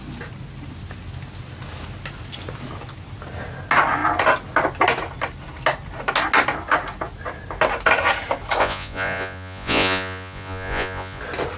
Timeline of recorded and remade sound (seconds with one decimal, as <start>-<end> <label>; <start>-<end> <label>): 0.0-8.6 recorded; 8.6-11.2 remade; 11.2-11.6 recorded